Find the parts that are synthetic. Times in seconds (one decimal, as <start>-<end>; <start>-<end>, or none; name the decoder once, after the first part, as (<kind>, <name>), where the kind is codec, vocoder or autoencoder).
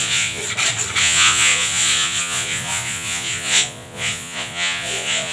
0.0-0.4 (vocoder, Vocos); 1.0-5.3